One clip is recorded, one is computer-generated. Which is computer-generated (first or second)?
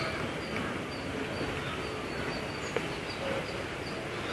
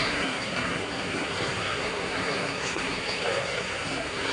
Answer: second